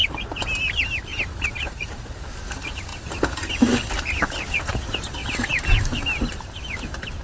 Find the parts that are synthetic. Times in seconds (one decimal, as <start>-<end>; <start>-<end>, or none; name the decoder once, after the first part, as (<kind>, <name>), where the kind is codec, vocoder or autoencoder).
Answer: 0.0-0.6 (vocoder, BigVGAN v2); 1.1-1.9